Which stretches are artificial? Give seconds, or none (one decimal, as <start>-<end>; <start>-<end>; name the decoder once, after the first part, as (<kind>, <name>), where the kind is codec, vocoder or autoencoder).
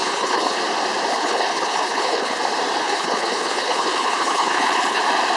0.0-0.6 (codec, HILCodec); 1.1-2.4; 2.8-5.0